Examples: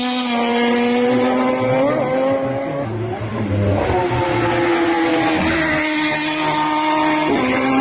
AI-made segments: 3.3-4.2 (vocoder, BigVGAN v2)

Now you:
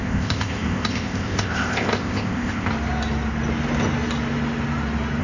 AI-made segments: 0.0-2.7 (codec, ZipCodec)

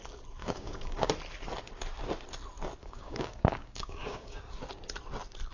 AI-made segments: 0.4-1.1 (codec, DAC); 2.8-4.4

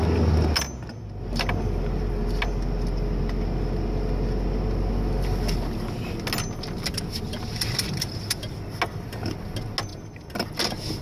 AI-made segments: none

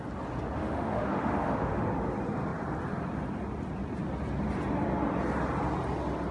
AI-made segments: 0.6-1.8 (autoencoder, DAC-VAE)